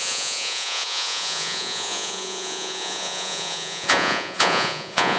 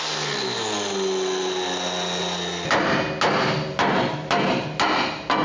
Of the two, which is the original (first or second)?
second